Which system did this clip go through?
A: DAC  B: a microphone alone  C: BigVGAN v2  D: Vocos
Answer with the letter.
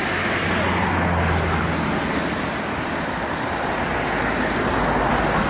B